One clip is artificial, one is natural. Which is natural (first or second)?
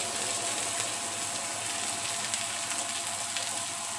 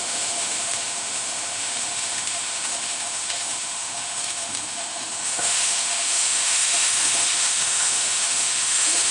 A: first